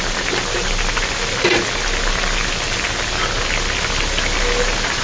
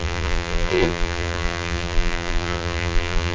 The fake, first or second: second